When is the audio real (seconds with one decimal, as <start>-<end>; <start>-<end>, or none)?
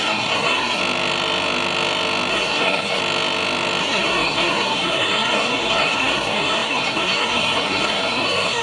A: 0.8-2.3; 3.0-3.8